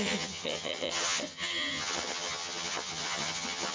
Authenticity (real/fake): fake